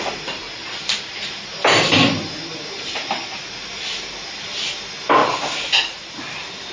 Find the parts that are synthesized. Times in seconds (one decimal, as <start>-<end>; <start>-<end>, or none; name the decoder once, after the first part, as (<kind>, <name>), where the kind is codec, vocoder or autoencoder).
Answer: none

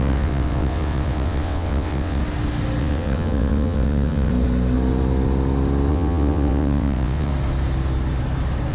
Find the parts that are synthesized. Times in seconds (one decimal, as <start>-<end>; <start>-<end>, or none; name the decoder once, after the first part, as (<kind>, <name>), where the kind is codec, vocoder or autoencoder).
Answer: 0.0-2.2 (vocoder, WaveNeXt); 2.8-4.3; 5.9-7.3

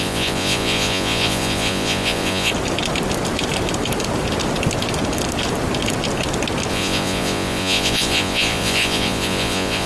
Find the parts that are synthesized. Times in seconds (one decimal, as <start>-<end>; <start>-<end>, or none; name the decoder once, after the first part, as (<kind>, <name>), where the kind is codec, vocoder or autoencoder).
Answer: 0.0-2.5 (vocoder, Vocos); 6.7-9.9

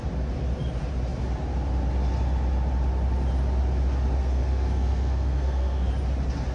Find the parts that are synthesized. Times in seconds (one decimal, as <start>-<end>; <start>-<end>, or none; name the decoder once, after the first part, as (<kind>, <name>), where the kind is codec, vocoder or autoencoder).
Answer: 4.2-5.9 (codec, SNAC)

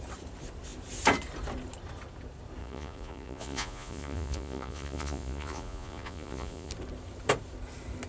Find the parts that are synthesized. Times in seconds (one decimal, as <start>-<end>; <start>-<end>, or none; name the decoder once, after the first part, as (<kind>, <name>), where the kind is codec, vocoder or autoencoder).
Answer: 2.6-6.7 (vocoder, Vocos)

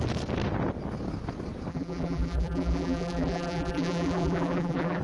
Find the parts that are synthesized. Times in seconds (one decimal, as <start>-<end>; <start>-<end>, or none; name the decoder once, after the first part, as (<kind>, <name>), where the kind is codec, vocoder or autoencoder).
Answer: 1.7-5.0 (vocoder, BigVGAN v2)

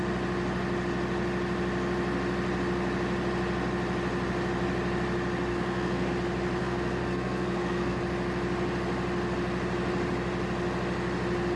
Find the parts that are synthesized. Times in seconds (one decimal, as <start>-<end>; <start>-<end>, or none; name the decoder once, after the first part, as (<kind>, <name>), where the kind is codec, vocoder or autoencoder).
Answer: 5.5-6.1 (codec, SNAC); 6.6-8.0